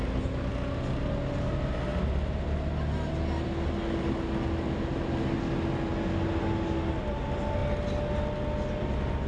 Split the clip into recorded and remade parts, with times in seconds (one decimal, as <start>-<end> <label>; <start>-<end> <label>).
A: 0.0-9.3 recorded